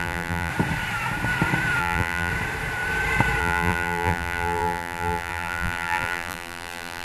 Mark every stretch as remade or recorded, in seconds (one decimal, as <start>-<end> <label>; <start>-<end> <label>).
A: 0.0-0.5 remade; 0.5-1.8 recorded; 1.8-2.3 remade; 2.3-3.4 recorded; 3.4-7.0 remade